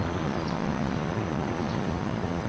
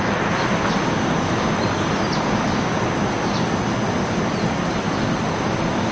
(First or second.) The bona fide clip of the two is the second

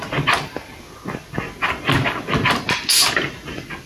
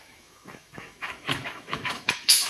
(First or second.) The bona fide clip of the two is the first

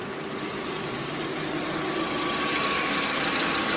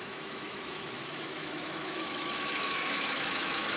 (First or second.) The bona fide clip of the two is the first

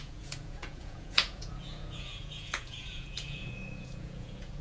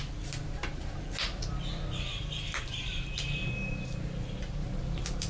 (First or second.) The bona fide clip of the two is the second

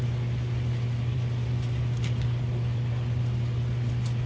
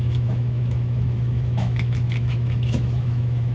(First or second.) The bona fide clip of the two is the first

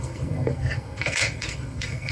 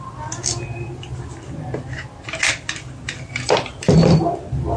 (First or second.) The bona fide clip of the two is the second